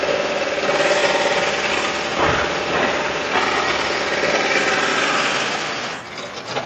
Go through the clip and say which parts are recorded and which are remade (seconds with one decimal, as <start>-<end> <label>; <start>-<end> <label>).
0.0-1.0 recorded; 1.0-1.7 remade; 1.7-2.1 recorded; 2.1-3.2 remade; 3.2-4.9 recorded; 4.9-6.0 remade; 6.0-6.7 recorded